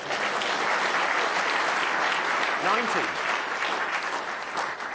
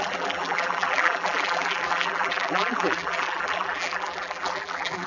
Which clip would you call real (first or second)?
first